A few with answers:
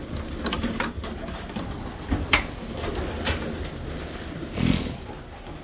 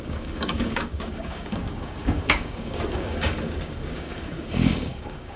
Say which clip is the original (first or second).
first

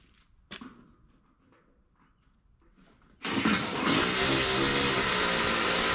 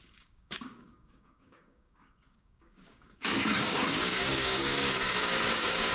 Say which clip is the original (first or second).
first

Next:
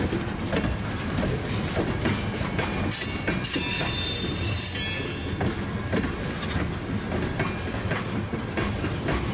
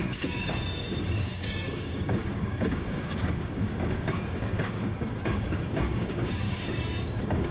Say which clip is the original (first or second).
first